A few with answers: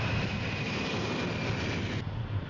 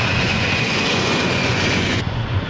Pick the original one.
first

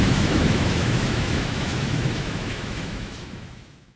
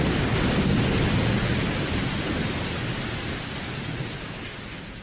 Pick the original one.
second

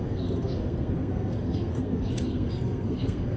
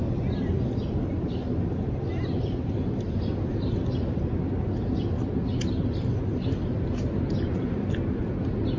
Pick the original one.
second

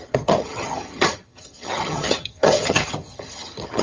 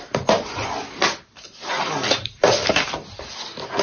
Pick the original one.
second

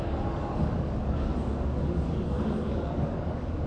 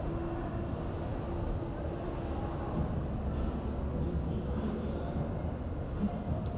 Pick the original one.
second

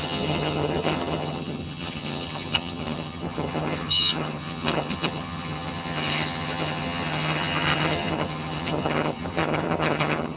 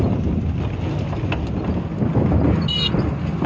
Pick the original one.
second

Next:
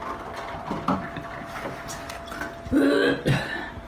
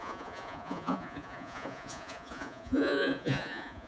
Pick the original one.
first